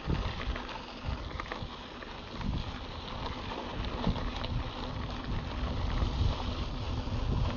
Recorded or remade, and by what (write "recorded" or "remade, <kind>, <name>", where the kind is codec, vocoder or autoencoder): recorded